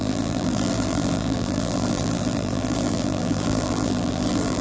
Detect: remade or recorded remade